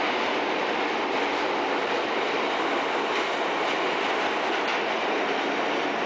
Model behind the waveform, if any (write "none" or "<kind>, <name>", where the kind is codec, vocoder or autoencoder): none